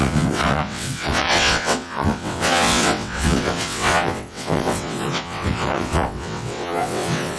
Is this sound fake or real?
fake